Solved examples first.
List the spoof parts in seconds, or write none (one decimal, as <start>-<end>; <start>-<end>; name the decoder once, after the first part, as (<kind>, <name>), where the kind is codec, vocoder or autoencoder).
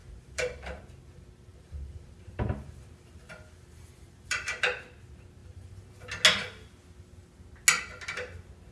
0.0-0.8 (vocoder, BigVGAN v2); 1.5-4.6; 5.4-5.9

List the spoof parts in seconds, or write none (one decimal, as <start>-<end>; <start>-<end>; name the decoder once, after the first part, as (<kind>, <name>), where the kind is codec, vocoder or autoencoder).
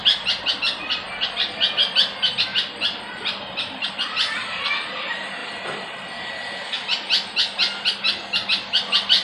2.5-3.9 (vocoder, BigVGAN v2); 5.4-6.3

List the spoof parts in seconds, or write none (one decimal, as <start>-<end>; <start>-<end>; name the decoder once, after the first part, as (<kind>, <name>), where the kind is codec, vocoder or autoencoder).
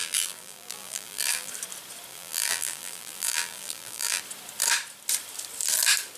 0.0-1.5 (vocoder, BigVGAN v2); 2.1-4.2